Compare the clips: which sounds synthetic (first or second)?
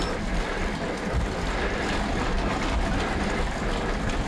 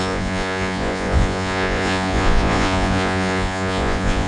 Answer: second